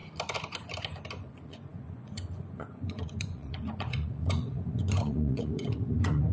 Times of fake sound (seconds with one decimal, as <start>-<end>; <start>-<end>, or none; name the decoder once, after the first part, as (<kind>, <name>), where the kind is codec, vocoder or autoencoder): 1.2-6.3 (vocoder, Vocos)